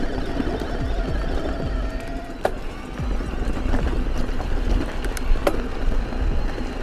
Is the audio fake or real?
real